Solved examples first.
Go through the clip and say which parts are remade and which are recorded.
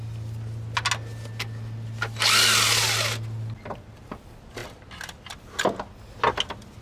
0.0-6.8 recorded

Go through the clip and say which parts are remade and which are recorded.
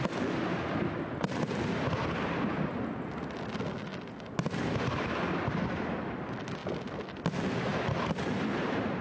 0.0-9.0 recorded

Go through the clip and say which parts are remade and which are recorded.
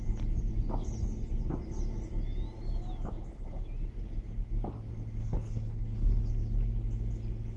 0.0-5.2 recorded; 5.2-6.2 remade; 6.2-7.6 recorded